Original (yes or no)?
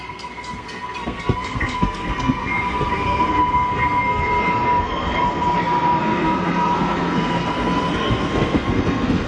no